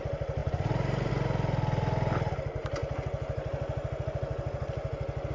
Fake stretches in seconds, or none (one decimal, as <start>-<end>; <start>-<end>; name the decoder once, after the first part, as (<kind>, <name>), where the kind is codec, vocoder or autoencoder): 0.4-1.1 (vocoder, BigVGAN v2)